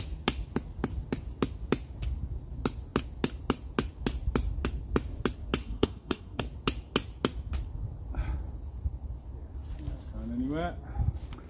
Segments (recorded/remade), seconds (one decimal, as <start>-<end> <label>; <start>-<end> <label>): 0.0-5.6 recorded; 5.6-6.4 remade; 6.4-11.5 recorded